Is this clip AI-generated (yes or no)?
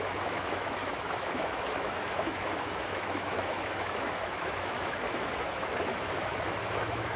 yes